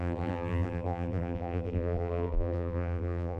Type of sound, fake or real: fake